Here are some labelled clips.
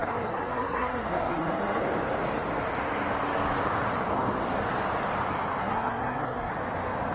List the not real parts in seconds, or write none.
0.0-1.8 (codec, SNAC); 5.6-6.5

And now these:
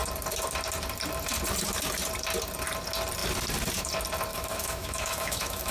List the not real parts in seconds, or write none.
4.3-5.7 (autoencoder, DAC-VAE)

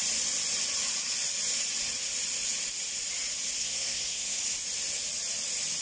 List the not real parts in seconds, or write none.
3.6-4.4 (codec, SNAC)

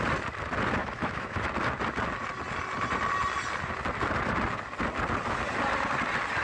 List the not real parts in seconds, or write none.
0.8-1.5 (autoencoder, DAC-VAE)

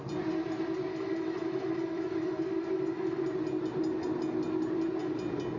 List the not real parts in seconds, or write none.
0.9-3.2 (autoencoder, DAC-VAE)

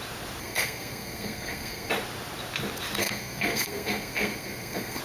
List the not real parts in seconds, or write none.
0.4-1.9 (codec, SNAC); 3.0-5.0

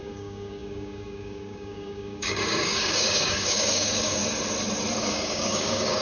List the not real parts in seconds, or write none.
0.0-4.2 (codec, DAC); 5.0-6.0